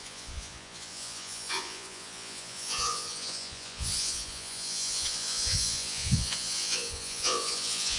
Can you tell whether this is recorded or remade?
remade